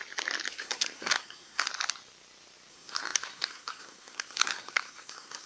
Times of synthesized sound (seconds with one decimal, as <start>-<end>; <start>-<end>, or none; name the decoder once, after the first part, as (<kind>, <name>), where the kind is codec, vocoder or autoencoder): 0.5-1.7 (codec, SNAC); 2.7-5.5